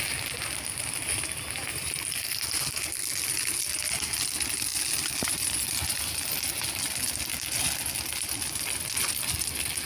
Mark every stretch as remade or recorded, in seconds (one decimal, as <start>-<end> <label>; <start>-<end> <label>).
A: 0.0-1.7 recorded; 1.7-2.8 remade; 2.8-9.9 recorded